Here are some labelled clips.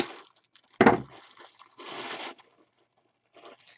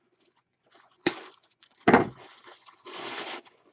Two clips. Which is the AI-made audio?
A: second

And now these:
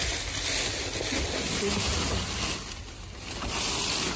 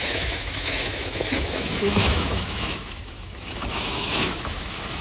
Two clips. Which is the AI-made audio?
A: second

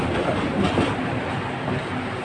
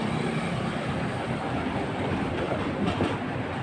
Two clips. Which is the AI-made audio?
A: second